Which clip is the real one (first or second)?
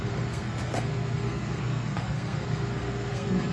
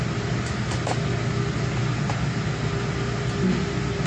second